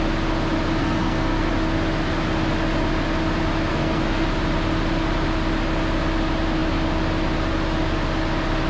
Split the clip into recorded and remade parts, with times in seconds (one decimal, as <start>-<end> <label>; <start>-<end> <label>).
0.0-0.8 recorded; 0.8-1.5 remade; 1.5-3.7 recorded; 3.7-4.3 remade; 4.3-8.7 recorded